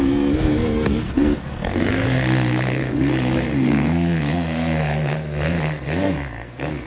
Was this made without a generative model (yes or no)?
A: no